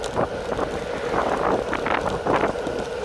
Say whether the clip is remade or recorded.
recorded